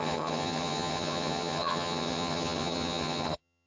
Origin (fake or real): fake